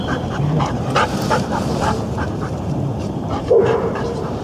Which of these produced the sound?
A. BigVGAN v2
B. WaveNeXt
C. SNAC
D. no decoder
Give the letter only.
A